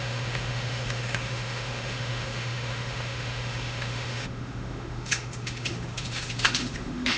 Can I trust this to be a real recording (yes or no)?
no